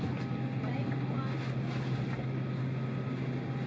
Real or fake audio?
real